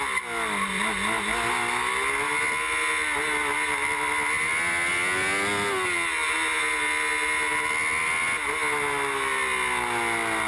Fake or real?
real